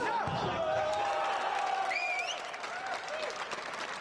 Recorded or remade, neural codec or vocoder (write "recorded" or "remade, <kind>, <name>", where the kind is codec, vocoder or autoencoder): recorded